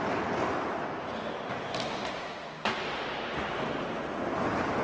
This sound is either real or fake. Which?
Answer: real